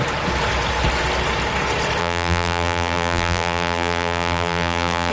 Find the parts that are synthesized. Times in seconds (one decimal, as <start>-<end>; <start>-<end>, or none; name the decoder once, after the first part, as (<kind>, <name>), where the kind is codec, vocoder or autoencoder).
2.0-5.1 (vocoder, BigVGAN v2)